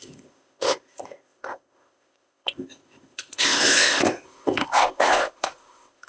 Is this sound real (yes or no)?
no